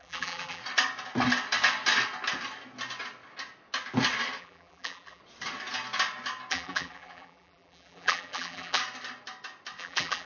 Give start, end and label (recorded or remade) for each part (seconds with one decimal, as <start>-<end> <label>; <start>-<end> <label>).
0.0-0.6 remade; 0.6-4.4 recorded; 4.4-5.2 remade; 5.2-6.5 recorded; 6.5-8.8 remade; 8.8-9.8 recorded; 9.8-10.3 remade